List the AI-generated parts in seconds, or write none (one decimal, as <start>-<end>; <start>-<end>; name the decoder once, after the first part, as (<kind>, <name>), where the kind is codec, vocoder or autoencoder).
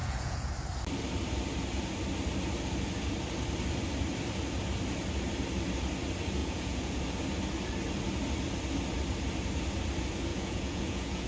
0.0-0.5 (vocoder, Vocos); 6.4-7.0; 10.3-11.3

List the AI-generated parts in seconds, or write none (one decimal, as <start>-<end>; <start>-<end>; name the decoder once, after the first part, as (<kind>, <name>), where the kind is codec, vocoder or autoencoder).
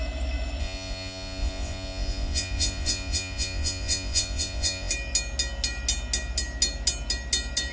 0.6-4.9 (vocoder, Vocos)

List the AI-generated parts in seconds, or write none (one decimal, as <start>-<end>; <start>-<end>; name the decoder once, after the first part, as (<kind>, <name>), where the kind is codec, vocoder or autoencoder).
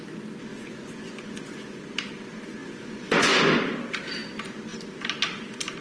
0.5-1.8 (vocoder, Vocos); 2.6-3.4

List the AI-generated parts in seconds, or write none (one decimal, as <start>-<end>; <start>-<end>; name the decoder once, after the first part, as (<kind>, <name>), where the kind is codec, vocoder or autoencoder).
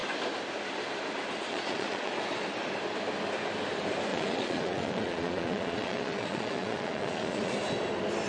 1.5-2.1 (vocoder, Vocos); 4.1-7.5